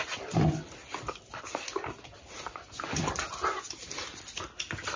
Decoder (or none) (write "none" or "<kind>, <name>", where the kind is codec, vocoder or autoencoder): none